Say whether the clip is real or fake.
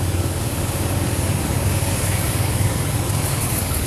fake